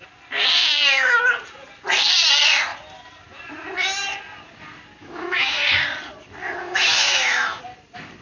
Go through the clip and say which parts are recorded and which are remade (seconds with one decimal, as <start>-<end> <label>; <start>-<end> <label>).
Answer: 0.0-0.6 recorded; 0.6-1.2 remade; 1.2-5.0 recorded; 5.0-5.6 remade; 5.6-6.4 recorded; 6.4-7.6 remade; 7.6-8.2 recorded